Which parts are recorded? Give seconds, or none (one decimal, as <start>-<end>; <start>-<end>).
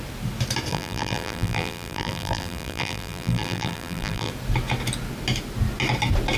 0.0-0.7; 4.3-6.4